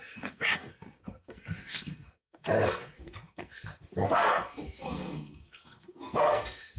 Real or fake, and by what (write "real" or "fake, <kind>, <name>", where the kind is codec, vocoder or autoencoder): fake, codec, SNAC